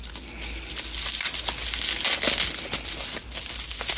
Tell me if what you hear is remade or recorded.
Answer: recorded